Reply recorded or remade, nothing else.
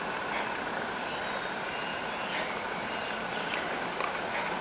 recorded